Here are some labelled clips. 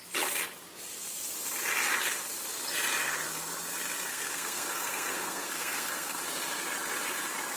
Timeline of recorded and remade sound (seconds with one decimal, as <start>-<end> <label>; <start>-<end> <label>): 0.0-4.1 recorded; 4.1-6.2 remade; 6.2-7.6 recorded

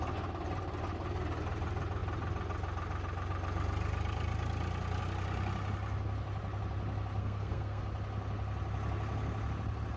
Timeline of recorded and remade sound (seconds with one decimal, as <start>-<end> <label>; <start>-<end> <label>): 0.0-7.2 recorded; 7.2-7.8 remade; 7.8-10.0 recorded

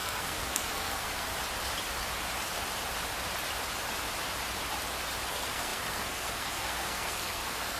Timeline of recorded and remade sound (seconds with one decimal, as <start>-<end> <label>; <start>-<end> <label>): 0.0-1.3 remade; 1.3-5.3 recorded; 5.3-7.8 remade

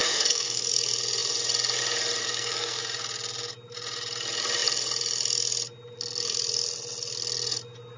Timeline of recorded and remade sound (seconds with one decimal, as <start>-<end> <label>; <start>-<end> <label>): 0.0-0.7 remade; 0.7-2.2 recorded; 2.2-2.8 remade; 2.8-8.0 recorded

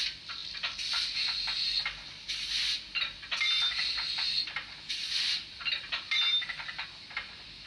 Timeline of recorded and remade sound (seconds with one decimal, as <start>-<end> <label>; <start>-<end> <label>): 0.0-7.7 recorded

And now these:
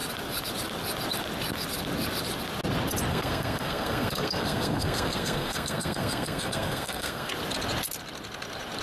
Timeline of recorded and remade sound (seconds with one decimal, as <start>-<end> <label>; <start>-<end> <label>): 0.0-3.1 recorded; 3.1-7.3 remade; 7.3-8.8 recorded

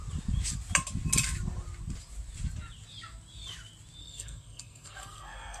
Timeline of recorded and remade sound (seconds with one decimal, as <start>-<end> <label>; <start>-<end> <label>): 0.0-4.0 recorded; 4.0-5.6 remade

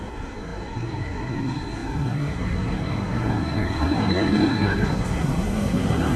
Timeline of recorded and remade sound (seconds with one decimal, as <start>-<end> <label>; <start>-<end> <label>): 0.0-6.2 remade